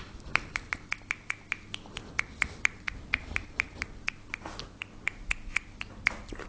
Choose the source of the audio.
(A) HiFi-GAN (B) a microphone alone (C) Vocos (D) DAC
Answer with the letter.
B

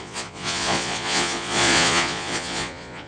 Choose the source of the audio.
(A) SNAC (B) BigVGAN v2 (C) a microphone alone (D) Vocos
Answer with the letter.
D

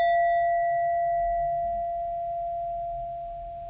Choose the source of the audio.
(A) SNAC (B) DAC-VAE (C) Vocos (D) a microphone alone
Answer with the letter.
D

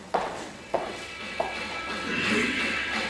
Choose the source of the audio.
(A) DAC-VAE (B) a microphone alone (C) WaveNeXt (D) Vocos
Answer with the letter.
C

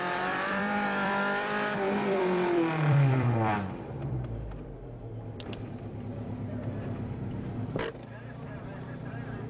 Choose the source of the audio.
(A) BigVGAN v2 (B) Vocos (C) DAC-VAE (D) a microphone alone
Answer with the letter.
A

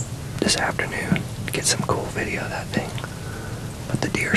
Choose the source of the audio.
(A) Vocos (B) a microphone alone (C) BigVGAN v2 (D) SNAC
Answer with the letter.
B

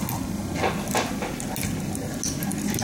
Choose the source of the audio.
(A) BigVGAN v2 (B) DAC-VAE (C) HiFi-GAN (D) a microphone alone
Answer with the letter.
D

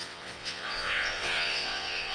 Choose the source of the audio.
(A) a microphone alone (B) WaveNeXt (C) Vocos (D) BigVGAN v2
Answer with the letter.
B